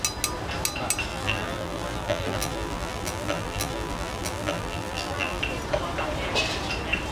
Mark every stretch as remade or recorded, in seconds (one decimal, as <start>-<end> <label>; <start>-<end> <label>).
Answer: 0.0-1.1 recorded; 1.1-5.4 remade; 5.4-7.1 recorded

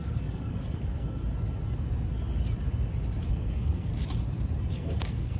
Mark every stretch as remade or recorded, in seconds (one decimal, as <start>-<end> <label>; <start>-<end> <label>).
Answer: 0.0-1.2 remade; 1.2-3.3 recorded; 3.3-3.9 remade; 3.9-4.7 recorded; 4.7-5.4 remade

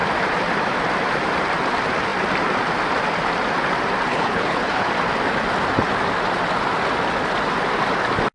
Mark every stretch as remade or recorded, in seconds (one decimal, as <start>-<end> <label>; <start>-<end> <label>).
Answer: 0.0-4.1 recorded; 4.1-4.9 remade; 4.9-8.3 recorded

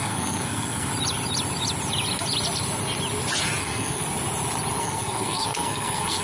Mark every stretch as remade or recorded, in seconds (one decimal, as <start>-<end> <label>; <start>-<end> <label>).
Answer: 0.0-0.9 remade; 0.9-3.6 recorded; 3.6-4.0 remade; 4.0-4.8 recorded; 4.8-6.2 remade

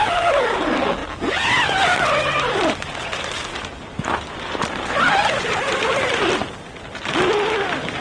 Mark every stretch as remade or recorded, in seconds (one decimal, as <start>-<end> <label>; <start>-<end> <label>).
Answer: 0.0-8.0 recorded

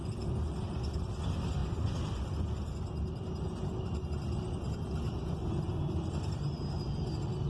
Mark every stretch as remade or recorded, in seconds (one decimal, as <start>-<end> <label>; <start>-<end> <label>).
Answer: 0.0-7.5 recorded

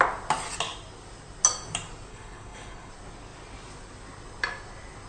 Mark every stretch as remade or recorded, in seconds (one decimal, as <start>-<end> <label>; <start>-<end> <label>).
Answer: 0.0-2.1 recorded; 2.1-2.9 remade; 2.9-5.1 recorded